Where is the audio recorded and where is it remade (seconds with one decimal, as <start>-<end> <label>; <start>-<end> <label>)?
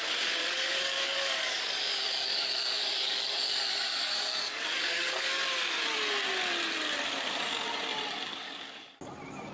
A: 0.0-0.4 recorded; 0.4-5.4 remade; 5.4-8.3 recorded; 8.3-9.0 remade; 9.0-9.5 recorded